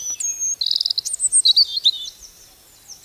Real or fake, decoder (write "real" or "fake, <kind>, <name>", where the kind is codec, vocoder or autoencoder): real